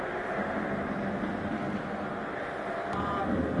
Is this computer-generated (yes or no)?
no